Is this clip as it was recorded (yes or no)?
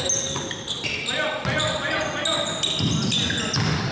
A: yes